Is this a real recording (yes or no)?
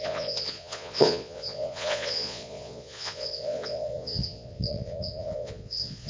no